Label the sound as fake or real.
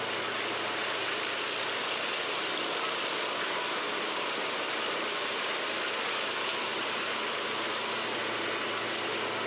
real